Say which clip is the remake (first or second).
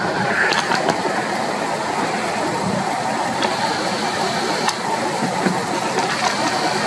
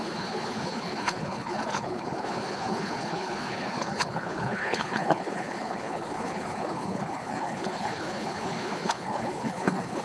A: second